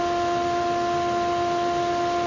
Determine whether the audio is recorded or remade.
recorded